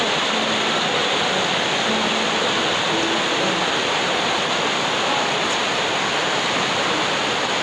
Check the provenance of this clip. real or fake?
real